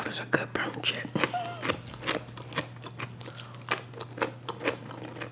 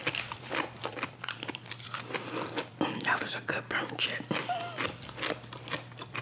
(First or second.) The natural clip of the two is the first